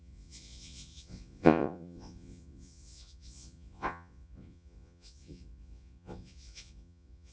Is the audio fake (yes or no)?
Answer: yes